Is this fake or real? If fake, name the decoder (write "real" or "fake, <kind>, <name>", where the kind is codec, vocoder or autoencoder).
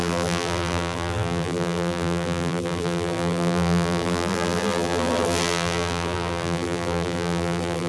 fake, vocoder, BigVGAN v2